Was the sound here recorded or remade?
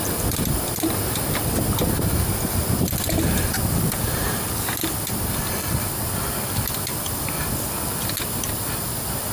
recorded